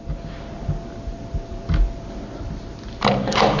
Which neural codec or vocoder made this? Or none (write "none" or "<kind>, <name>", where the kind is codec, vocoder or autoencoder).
none